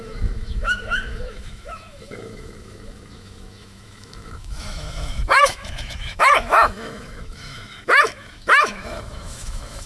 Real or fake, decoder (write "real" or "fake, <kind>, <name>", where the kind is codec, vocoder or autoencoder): fake, autoencoder, DAC-VAE